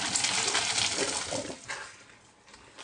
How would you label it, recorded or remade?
recorded